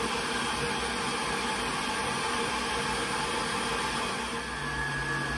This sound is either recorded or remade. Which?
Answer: recorded